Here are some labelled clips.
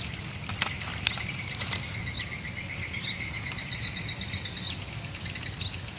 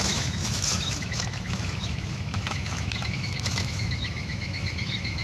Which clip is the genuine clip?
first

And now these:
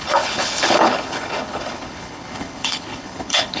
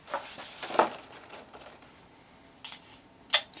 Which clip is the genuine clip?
second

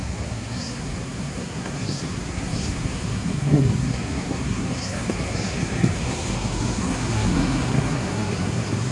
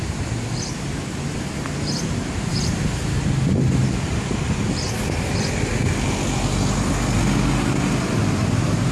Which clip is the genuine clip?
second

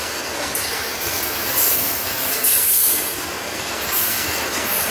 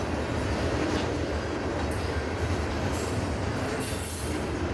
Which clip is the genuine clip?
second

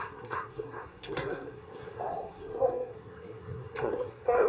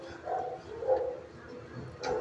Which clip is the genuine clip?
second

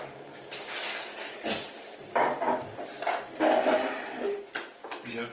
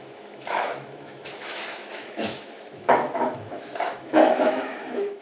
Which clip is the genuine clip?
first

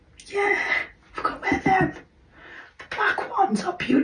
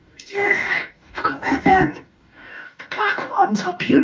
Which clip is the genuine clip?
first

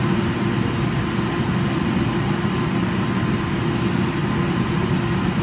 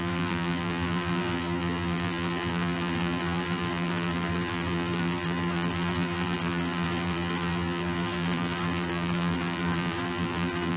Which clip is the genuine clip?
first